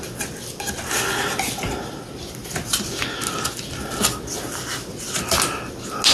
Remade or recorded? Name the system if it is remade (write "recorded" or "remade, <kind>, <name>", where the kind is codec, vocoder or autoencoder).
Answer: recorded